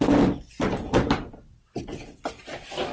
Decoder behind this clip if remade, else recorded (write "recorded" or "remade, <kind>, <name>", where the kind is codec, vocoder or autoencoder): recorded